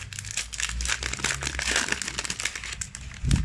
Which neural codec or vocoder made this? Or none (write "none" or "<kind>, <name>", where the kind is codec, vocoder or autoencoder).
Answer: none